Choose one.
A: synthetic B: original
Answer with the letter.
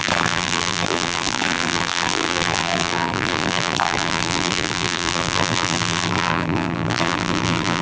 A